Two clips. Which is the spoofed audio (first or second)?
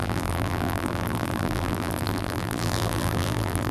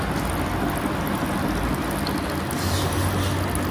first